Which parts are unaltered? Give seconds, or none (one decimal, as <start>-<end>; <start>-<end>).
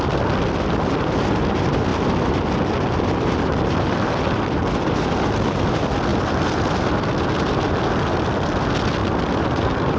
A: 0.0-10.0